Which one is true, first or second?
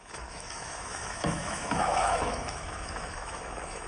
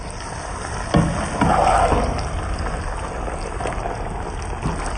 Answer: second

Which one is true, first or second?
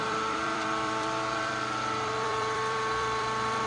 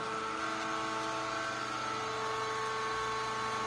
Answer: second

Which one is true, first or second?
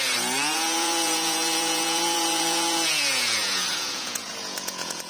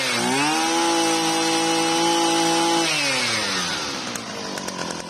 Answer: second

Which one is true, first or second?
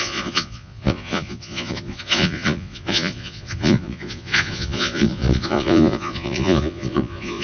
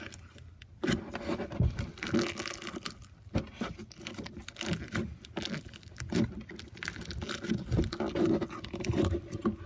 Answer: second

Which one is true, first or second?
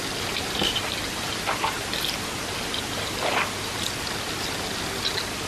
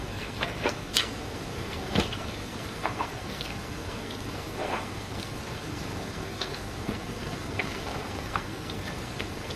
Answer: first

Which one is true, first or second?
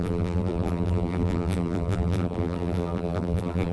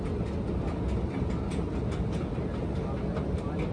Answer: second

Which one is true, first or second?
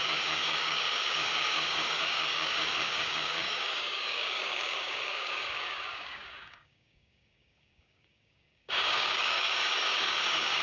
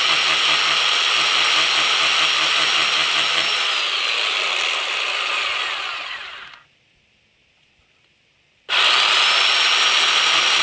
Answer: second